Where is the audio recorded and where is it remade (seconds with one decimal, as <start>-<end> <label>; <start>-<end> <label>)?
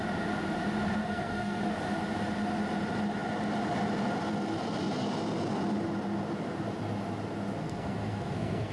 0.0-1.0 recorded; 1.0-1.6 remade; 1.6-7.6 recorded; 7.6-8.7 remade